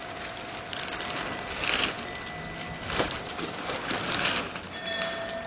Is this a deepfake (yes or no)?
no